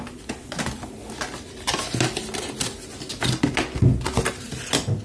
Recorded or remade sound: recorded